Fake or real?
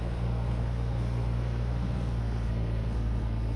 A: fake